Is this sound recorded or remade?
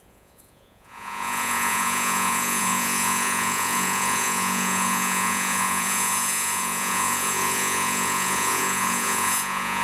remade